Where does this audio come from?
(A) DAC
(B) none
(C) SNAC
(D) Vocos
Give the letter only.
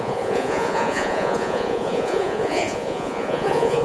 D